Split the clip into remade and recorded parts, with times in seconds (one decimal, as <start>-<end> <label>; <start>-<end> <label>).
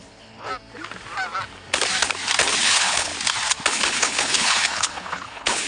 0.0-0.5 remade; 0.5-2.6 recorded; 2.6-3.1 remade; 3.1-3.7 recorded; 3.7-5.7 remade